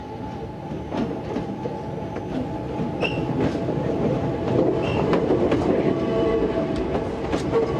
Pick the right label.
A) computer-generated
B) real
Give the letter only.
B